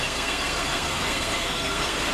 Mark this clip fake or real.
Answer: fake